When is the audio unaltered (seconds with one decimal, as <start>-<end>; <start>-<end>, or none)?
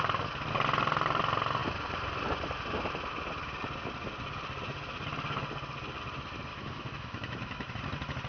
0.0-6.5; 7.8-8.3